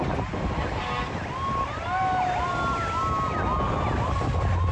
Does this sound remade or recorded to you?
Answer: recorded